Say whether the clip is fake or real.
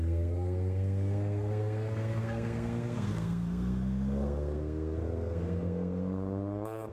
fake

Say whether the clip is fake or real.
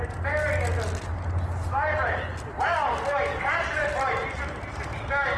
real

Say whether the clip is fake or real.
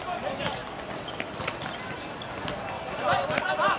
real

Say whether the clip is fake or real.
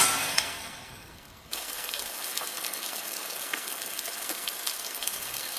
fake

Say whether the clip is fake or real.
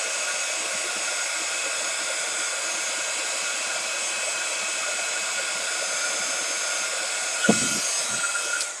real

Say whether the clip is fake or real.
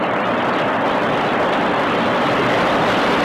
real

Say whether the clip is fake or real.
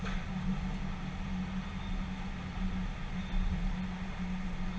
real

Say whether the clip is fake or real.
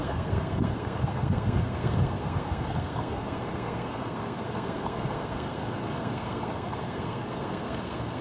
fake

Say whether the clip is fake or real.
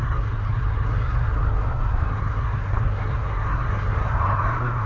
fake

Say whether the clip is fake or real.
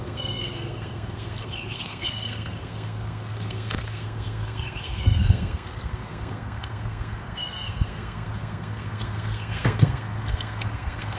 fake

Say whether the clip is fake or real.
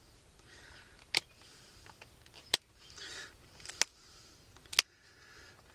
real